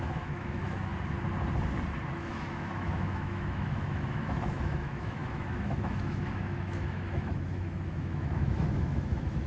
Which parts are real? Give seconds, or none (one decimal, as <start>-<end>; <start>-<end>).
0.9-2.1